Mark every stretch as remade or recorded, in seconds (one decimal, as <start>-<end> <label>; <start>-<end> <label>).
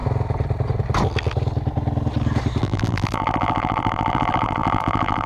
0.0-2.6 recorded; 2.6-5.3 remade